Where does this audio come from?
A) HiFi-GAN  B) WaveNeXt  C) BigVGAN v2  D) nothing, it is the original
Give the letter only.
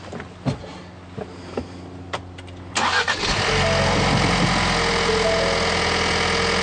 D